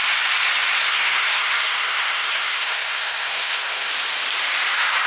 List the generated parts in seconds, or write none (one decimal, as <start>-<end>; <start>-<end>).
0.8-3.9